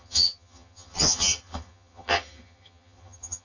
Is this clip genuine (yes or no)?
no